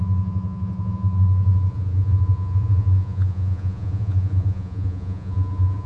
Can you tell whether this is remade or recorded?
remade